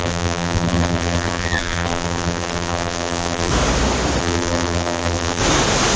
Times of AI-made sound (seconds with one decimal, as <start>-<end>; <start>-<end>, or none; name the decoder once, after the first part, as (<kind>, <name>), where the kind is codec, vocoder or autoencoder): 0.0-3.5 (vocoder, BigVGAN v2); 4.2-5.4